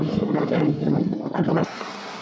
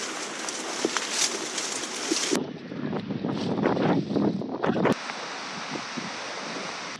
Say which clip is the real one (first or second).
second